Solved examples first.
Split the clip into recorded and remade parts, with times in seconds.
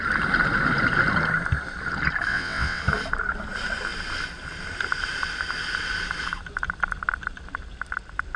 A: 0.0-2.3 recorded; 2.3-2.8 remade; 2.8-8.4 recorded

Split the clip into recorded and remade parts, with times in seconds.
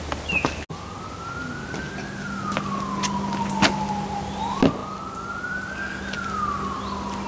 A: 0.0-7.3 recorded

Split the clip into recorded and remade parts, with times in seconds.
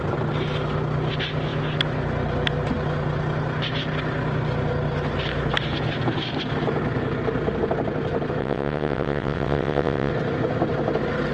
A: 0.0-8.4 recorded; 8.4-10.1 remade; 10.1-11.3 recorded